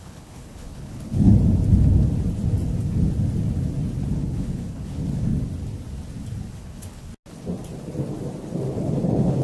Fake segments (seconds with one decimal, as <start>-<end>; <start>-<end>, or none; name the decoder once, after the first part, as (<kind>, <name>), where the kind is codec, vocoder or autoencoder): 0.0-1.3 (codec, HILCodec); 4.1-5.3; 6.5-7.1; 8.8-9.4